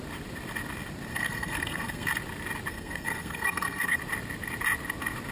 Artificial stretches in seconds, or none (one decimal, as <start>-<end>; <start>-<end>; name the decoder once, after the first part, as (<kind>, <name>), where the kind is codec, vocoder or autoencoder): 1.1-2.1 (codec, SNAC); 2.7-4.0